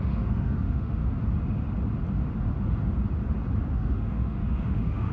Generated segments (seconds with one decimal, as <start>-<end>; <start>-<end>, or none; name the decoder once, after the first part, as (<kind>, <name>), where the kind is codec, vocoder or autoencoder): 0.0-1.0 (autoencoder, DAC-VAE); 3.7-5.1